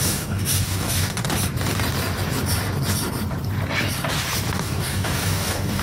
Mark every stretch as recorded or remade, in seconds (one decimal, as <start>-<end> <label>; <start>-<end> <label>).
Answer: 0.0-1.2 remade; 1.2-4.5 recorded; 4.5-5.8 remade